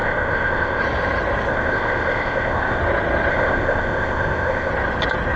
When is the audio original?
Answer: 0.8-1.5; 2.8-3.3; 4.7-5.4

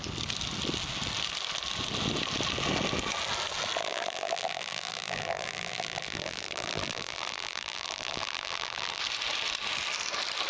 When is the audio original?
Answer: 0.0-3.8; 9.0-10.5

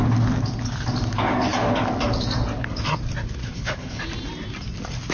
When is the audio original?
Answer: 0.0-3.4; 4.0-5.1

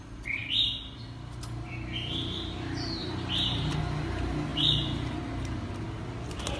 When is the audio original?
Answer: 0.0-3.0; 3.8-4.5; 5.2-6.6